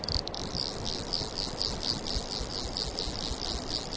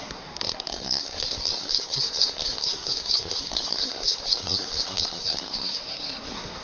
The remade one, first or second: second